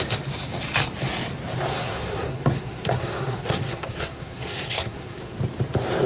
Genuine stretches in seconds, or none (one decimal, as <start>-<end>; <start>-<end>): 0.0-1.7; 5.4-6.1